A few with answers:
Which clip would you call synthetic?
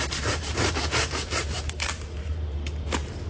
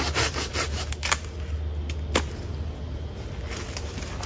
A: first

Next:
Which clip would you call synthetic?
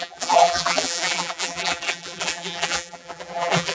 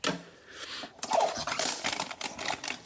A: first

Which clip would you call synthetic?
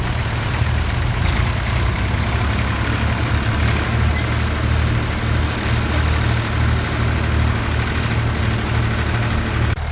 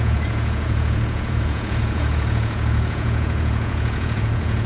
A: second